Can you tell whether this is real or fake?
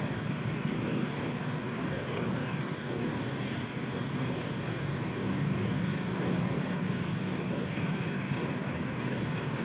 fake